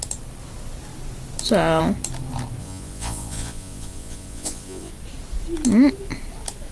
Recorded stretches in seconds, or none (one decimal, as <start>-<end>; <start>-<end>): 0.0-2.6; 4.9-6.7